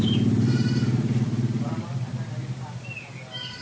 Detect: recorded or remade recorded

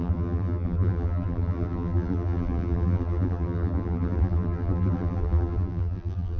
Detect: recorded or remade remade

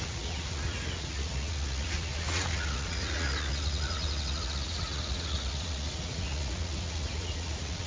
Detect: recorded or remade remade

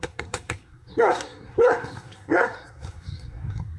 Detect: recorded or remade remade